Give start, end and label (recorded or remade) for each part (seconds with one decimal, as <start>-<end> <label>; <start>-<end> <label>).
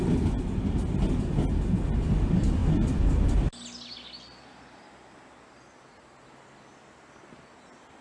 0.0-8.0 recorded